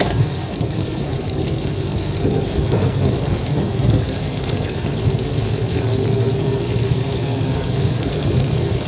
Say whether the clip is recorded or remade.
remade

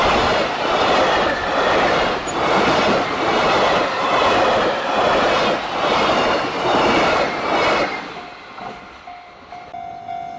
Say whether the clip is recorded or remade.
recorded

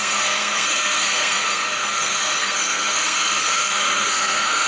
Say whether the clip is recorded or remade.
remade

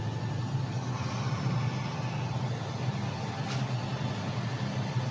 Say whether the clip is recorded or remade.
recorded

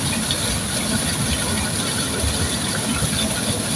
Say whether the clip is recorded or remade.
recorded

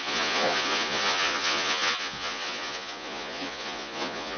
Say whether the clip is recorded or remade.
remade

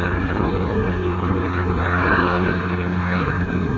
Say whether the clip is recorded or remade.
remade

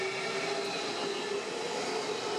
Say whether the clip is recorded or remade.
recorded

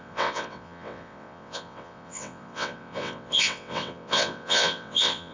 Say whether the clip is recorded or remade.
remade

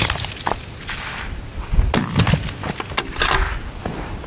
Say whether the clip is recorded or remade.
recorded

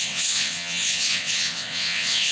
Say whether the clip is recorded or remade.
remade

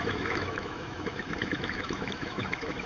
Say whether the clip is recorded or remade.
remade